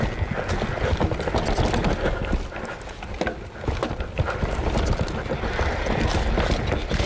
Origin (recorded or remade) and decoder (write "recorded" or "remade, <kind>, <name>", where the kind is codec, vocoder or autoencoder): recorded